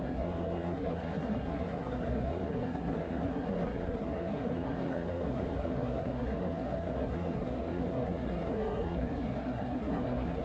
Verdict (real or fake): fake